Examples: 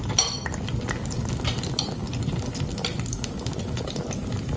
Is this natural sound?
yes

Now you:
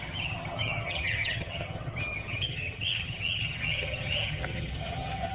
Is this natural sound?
no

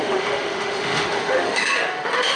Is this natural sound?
no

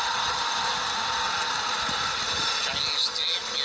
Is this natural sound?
yes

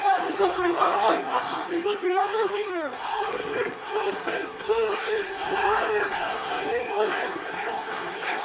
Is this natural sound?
no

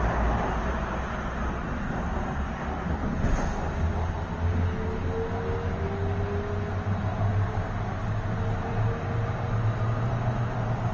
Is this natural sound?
yes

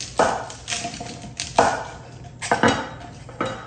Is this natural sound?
yes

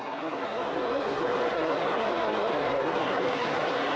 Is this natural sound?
no